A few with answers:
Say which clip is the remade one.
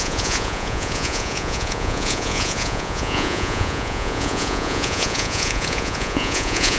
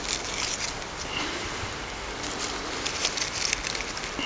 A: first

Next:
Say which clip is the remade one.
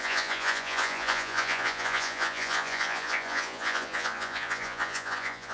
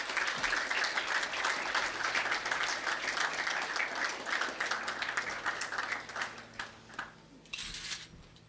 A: first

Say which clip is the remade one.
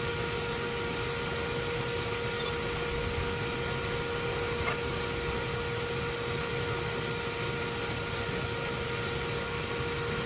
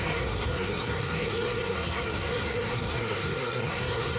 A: second